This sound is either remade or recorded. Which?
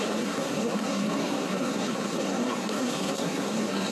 remade